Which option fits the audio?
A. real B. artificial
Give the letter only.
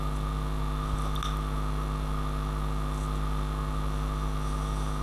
A